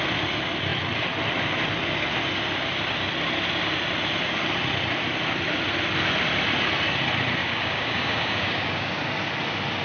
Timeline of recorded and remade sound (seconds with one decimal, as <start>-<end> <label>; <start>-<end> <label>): 0.0-7.4 recorded; 7.4-9.0 remade; 9.0-9.8 recorded